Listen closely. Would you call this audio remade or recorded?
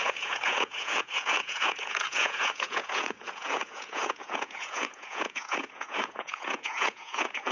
remade